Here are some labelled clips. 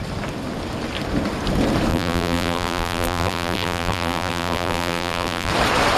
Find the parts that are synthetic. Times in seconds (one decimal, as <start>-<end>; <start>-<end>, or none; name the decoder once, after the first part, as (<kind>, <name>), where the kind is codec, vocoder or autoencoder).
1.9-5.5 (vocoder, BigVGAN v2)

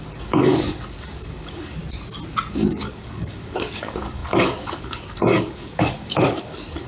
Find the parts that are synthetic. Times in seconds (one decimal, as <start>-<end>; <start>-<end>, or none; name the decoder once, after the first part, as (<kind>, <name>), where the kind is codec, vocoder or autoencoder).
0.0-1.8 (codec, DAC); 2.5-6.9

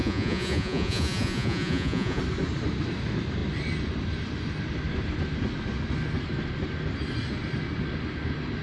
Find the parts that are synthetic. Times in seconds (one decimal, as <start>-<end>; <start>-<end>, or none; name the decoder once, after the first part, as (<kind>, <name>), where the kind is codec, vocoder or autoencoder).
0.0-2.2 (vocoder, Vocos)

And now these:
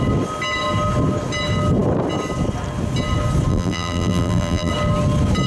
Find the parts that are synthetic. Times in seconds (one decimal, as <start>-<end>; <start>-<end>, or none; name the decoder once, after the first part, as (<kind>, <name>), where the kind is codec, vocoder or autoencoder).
3.5-4.7 (vocoder, BigVGAN v2)

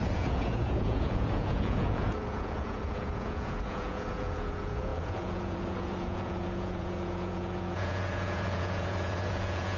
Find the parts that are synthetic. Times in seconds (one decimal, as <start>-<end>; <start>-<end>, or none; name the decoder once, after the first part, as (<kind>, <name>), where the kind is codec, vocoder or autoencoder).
0.0-9.8 (vocoder, Vocos)

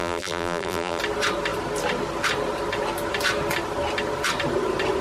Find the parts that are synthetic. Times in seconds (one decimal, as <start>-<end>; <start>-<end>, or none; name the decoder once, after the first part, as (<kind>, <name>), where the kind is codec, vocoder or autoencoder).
0.0-1.0 (vocoder, BigVGAN v2)

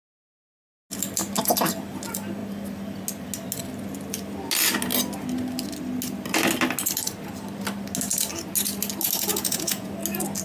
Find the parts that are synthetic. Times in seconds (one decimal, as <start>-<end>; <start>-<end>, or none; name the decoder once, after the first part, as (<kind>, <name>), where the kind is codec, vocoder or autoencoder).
9.3-9.9 (vocoder, Vocos)